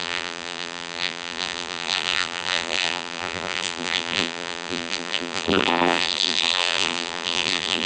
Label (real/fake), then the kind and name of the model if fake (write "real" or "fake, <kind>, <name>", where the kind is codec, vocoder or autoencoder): fake, vocoder, BigVGAN v2